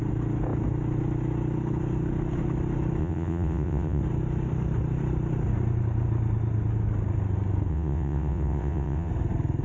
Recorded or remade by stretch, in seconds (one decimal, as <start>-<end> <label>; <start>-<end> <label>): 0.0-3.0 recorded; 3.0-4.0 remade; 4.0-7.7 recorded; 7.7-9.1 remade; 9.1-9.6 recorded